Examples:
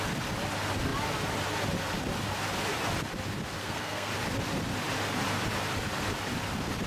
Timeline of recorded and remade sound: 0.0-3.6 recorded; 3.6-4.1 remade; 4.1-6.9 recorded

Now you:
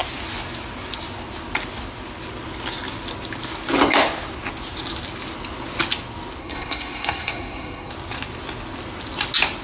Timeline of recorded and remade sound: 0.0-6.4 recorded; 6.4-7.9 remade; 7.9-9.6 recorded

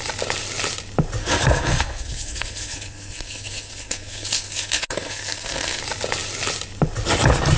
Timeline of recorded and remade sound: 0.0-1.2 recorded; 1.2-5.8 remade; 5.8-7.6 recorded

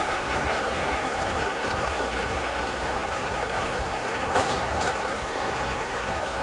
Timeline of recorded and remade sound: 0.0-6.4 remade

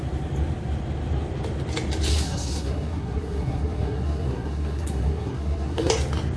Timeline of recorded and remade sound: 0.0-2.1 recorded; 2.1-5.9 remade; 5.9-6.4 recorded